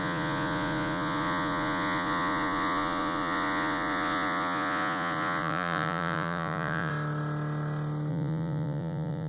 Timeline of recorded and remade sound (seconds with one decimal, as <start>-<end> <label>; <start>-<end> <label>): 0.0-6.9 remade; 6.9-8.1 recorded; 8.1-9.3 remade